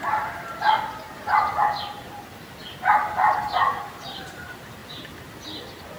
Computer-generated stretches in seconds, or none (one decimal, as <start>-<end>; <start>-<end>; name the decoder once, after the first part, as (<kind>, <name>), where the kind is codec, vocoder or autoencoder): none